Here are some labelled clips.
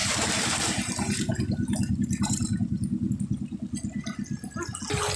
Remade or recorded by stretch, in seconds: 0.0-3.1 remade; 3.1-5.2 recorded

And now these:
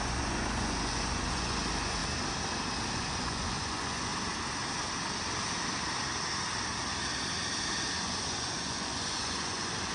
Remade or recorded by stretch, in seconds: 0.0-2.0 remade; 2.0-2.9 recorded; 2.9-4.1 remade; 4.1-8.0 recorded; 8.0-9.9 remade

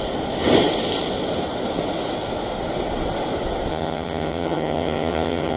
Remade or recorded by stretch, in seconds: 0.0-3.7 recorded; 3.7-5.6 remade

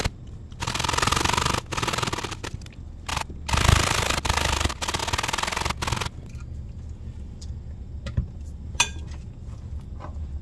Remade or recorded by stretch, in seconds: 0.0-1.1 remade; 1.1-1.7 recorded; 1.7-3.1 remade; 3.1-4.0 recorded; 4.0-5.0 remade; 5.0-9.3 recorded; 9.3-10.4 remade

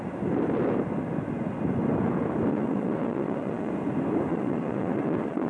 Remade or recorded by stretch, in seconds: 0.0-2.5 recorded; 2.5-3.7 remade; 3.7-4.3 recorded; 4.3-5.5 remade

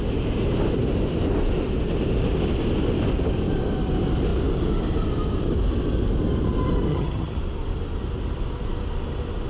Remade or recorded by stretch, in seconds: 0.0-6.9 recorded; 6.9-7.4 remade; 7.4-9.5 recorded

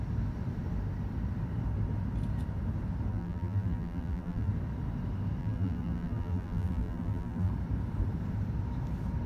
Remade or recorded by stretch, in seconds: 0.0-3.1 recorded; 3.1-4.5 remade; 4.5-5.4 recorded; 5.4-7.5 remade; 7.5-9.3 recorded

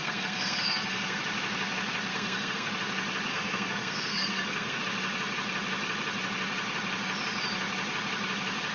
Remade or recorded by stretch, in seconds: 0.0-1.2 remade; 1.2-2.1 recorded; 2.1-2.7 remade; 2.7-3.3 recorded; 3.3-4.8 remade; 4.8-8.7 recorded